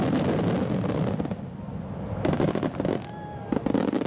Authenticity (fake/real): real